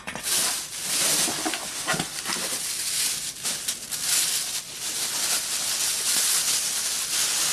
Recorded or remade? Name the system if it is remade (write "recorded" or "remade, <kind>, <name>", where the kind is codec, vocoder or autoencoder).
recorded